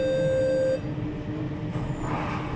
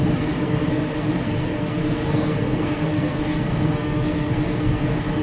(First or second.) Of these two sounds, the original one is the first